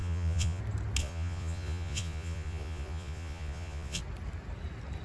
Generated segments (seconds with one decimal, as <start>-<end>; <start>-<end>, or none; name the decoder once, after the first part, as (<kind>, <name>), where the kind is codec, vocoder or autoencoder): 0.0-0.6 (vocoder, Vocos); 1.0-4.0